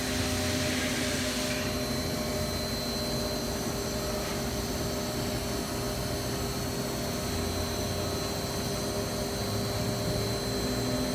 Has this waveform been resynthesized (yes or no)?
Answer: no